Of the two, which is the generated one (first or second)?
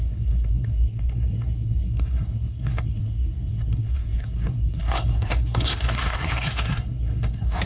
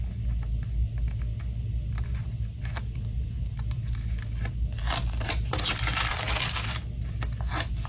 first